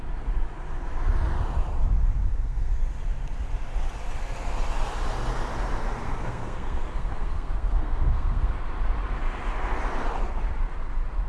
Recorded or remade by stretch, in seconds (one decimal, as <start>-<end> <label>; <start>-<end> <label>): 0.0-2.3 recorded; 2.3-2.8 remade; 2.8-6.0 recorded; 6.0-8.5 remade; 8.5-11.3 recorded